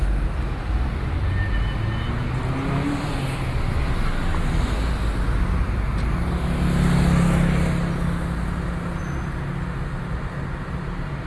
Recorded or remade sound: recorded